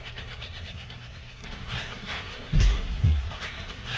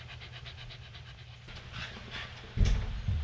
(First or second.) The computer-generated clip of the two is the first